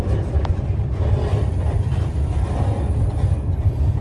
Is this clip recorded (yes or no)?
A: yes